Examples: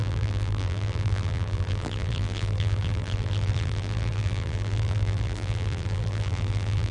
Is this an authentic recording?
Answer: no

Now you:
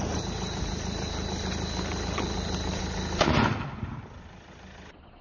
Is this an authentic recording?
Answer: yes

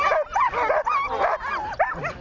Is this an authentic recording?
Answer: yes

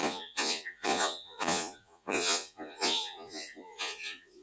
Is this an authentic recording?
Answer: no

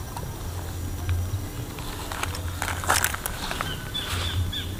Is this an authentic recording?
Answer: yes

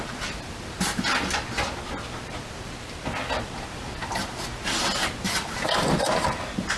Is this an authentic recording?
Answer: yes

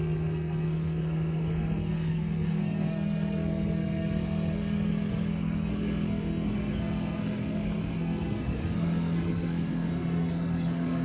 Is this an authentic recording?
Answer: no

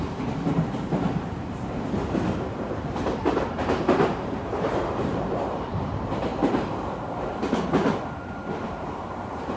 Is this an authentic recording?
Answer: no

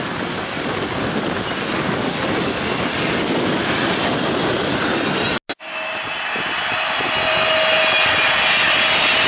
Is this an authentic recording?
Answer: yes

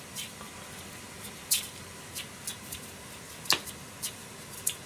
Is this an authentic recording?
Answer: yes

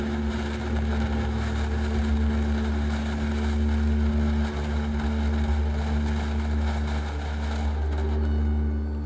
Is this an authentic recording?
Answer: yes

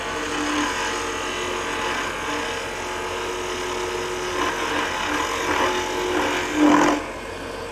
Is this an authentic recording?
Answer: yes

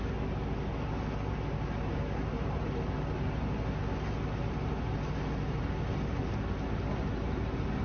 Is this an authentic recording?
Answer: yes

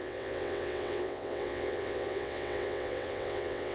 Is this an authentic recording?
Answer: no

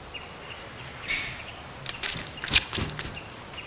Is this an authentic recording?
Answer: yes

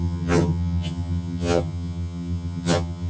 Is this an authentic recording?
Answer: no